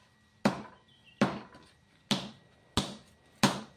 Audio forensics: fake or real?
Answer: real